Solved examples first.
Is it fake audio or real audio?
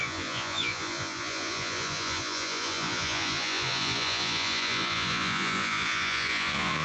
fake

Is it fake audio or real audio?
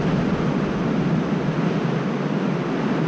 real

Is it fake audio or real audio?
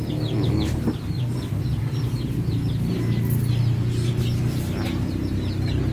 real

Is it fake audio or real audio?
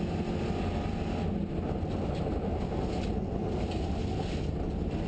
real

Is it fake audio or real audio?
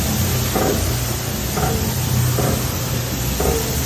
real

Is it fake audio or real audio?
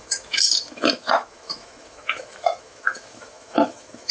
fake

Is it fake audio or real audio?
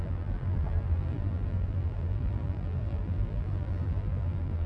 fake